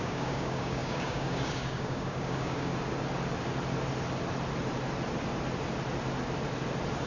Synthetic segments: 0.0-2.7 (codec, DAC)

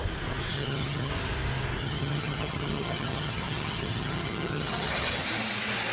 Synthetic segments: 0.5-1.1 (vocoder, HiFi-GAN); 1.8-5.3

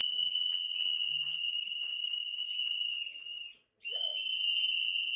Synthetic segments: 0.0-1.1 (vocoder, Vocos)

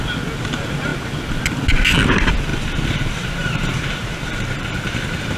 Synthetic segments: 2.5-4.7 (vocoder, BigVGAN v2)

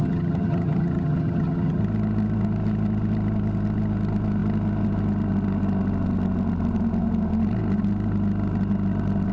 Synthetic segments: 0.0-1.8 (vocoder, HiFi-GAN)

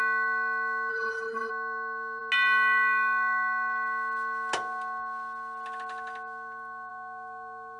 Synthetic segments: 0.9-1.5 (codec, HILCodec)

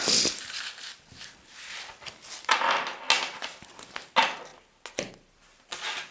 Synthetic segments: none